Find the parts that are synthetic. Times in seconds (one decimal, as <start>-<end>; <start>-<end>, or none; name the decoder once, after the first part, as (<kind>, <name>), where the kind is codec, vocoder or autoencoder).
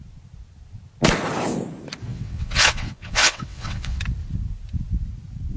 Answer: 2.1-4.0 (vocoder, WaveNeXt)